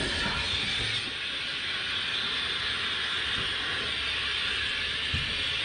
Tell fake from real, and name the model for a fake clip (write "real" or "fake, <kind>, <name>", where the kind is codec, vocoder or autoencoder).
real